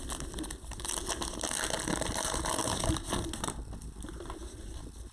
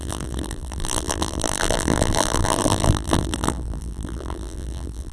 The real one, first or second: first